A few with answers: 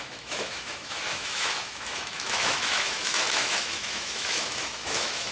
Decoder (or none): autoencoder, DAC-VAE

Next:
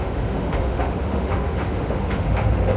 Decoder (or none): autoencoder, DAC-VAE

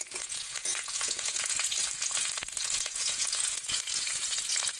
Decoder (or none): vocoder, Vocos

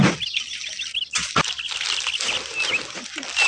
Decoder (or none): none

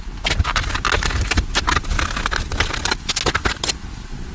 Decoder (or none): none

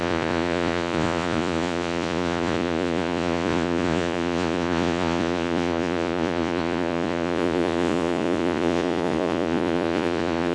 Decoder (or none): vocoder, Vocos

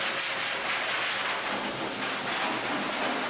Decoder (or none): none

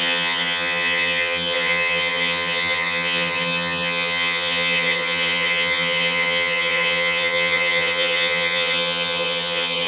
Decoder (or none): vocoder, HiFi-GAN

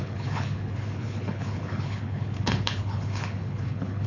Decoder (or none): codec, HILCodec